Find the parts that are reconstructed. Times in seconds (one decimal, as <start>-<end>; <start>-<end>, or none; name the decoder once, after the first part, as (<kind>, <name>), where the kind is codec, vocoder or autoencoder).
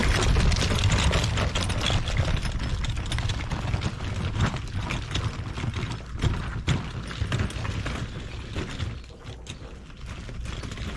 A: none